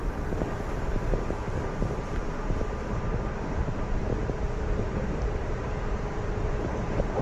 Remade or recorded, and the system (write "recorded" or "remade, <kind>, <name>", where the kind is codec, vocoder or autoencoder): remade, vocoder, BigVGAN v2